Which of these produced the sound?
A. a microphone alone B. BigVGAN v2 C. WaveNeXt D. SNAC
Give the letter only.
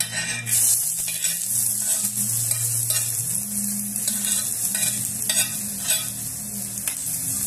A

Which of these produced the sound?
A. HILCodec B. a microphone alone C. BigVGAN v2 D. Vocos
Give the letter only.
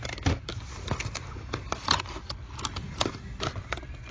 C